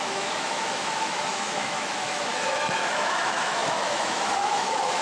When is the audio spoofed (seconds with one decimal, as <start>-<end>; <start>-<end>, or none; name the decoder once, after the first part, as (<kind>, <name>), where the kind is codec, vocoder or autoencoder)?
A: 0.0-5.0 (autoencoder, DAC-VAE)